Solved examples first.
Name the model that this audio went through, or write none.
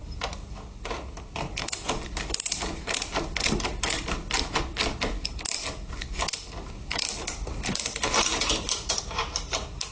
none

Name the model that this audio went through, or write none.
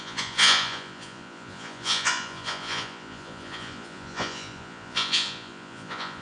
vocoder, Vocos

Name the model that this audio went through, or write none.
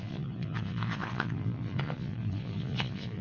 vocoder, Vocos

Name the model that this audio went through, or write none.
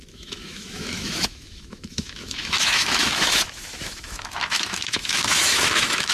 autoencoder, DAC-VAE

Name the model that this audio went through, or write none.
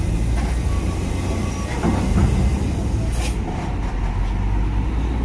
none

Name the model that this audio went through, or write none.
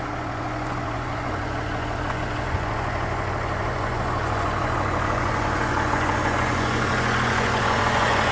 vocoder, Vocos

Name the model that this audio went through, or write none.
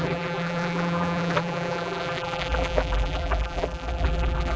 vocoder, BigVGAN v2